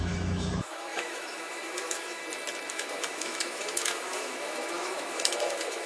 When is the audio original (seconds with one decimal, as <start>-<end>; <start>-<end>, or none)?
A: 2.2-2.7